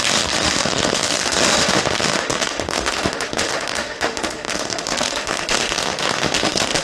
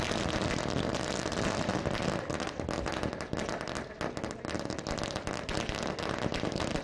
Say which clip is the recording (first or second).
second